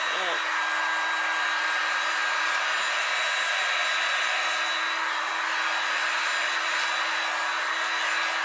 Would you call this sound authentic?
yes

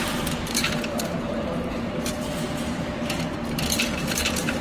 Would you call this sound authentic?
no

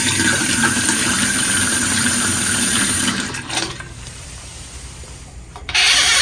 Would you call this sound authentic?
no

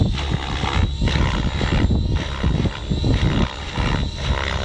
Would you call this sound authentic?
yes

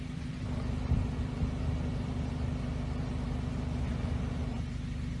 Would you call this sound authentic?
yes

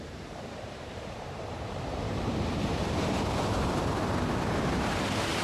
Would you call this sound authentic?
no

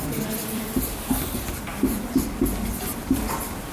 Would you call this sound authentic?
no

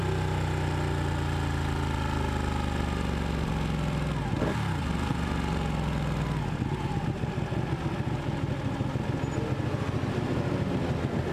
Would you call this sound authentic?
yes